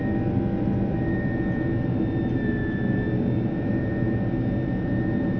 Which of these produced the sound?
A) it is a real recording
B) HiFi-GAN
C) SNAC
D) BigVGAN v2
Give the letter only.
A